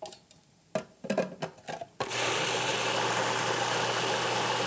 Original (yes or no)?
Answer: yes